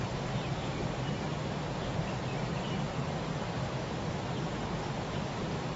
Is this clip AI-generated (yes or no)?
yes